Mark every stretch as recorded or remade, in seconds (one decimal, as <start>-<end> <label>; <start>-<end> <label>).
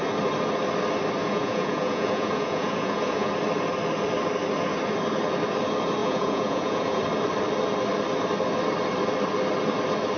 0.0-1.2 recorded; 1.2-3.3 remade; 3.3-6.0 recorded; 6.0-7.0 remade; 7.0-10.2 recorded